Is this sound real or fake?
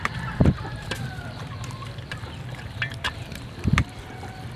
fake